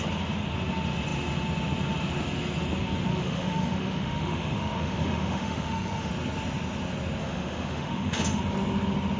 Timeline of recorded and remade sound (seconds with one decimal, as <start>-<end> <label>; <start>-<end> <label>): 0.0-3.1 recorded; 3.1-6.1 remade; 6.1-7.2 recorded; 7.2-8.4 remade; 8.4-9.2 recorded